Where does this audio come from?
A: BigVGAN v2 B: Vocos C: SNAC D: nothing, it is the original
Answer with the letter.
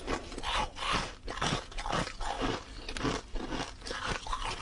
D